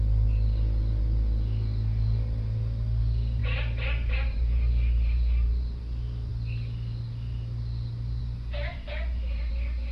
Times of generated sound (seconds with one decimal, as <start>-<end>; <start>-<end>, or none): 3.4-5.8; 8.7-9.5